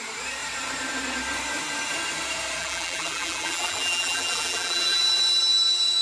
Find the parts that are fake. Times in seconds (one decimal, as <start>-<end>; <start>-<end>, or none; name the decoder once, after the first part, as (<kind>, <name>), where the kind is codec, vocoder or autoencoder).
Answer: 2.6-5.0 (vocoder, BigVGAN v2)